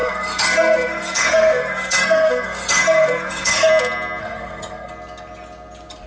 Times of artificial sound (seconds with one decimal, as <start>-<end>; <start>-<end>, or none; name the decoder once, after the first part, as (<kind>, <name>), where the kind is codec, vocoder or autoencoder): 0.0-3.7 (codec, SNAC); 4.2-4.9